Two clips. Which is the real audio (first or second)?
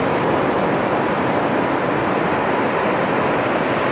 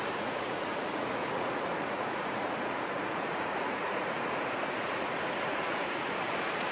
first